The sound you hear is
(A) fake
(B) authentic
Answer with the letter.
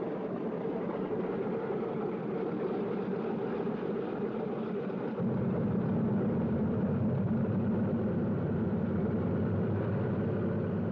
B